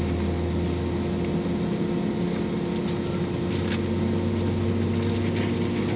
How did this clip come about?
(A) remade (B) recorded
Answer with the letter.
B